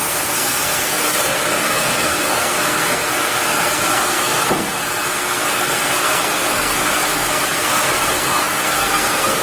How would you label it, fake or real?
fake